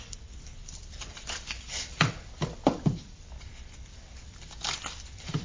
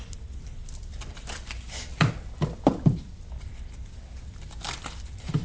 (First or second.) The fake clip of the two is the first